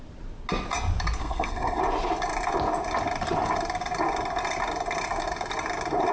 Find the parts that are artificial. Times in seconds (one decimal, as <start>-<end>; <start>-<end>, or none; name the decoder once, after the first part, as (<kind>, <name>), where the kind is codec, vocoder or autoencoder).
1.2-1.8 (codec, SNAC)